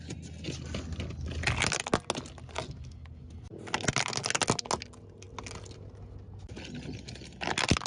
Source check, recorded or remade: recorded